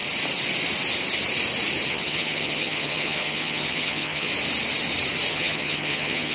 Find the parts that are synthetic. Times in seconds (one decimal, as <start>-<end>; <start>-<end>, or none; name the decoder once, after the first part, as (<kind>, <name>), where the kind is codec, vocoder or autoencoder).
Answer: 1.9-4.3 (vocoder, HiFi-GAN); 5.3-6.3